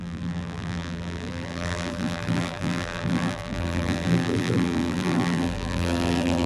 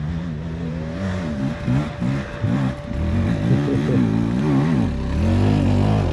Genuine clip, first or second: second